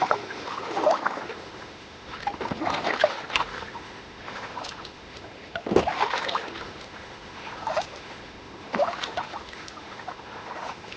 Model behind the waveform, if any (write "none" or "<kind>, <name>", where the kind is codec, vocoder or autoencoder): autoencoder, DAC-VAE